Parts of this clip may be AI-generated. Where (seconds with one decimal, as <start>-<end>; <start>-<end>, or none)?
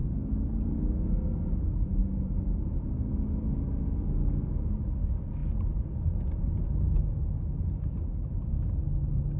0.0-0.8; 2.0-3.1; 5.4-6.9